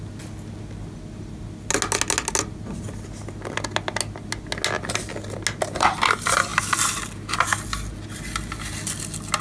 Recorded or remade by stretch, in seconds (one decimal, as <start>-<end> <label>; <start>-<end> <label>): 0.0-9.4 recorded